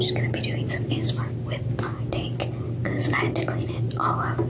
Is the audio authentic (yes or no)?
yes